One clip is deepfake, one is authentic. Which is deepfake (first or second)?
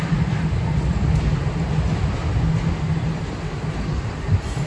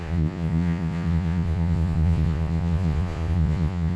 second